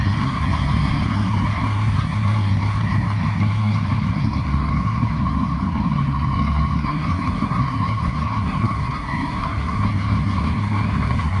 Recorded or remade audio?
remade